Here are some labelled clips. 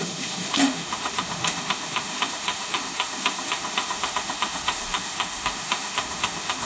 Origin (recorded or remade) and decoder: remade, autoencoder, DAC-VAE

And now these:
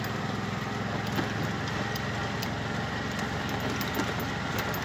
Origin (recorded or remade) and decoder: recorded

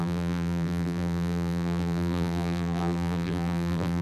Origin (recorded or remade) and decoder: remade, vocoder, BigVGAN v2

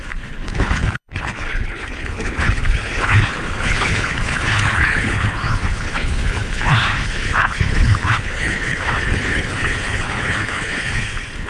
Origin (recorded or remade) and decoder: remade, codec, HILCodec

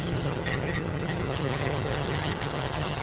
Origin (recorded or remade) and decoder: remade, vocoder, HiFi-GAN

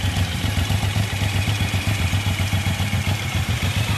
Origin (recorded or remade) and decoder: remade, vocoder, BigVGAN v2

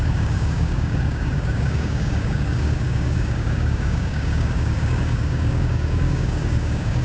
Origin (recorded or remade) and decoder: remade, codec, DAC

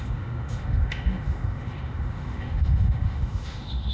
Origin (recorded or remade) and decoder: remade, autoencoder, DAC-VAE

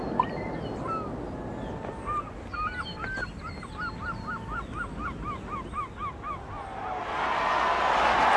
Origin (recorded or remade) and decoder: recorded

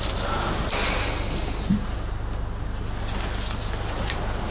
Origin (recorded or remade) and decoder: recorded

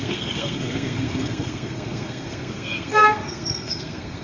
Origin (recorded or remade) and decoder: remade, codec, SNAC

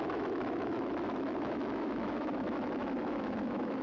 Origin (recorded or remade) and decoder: remade, autoencoder, DAC-VAE